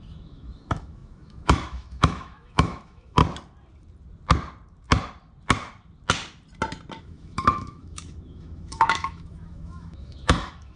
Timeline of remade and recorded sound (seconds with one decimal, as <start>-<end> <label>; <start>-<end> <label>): 0.0-3.2 remade; 3.2-7.0 recorded; 7.0-10.8 remade